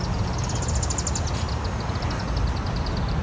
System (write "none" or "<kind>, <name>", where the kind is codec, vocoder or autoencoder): none